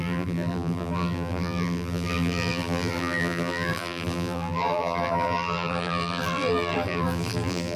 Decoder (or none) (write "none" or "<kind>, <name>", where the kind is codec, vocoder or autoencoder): vocoder, BigVGAN v2